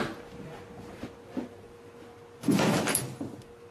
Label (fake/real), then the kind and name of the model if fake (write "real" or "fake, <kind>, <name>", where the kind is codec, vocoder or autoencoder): real